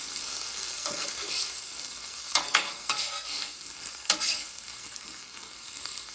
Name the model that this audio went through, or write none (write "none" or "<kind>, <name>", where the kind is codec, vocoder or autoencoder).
codec, SNAC